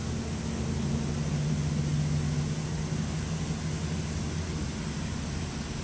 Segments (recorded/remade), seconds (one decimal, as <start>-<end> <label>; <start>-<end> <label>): 0.0-5.8 recorded